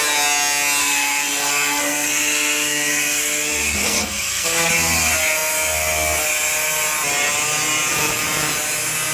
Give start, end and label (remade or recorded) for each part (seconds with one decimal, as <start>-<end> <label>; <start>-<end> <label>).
0.0-0.8 recorded; 0.8-4.7 remade; 4.7-9.1 recorded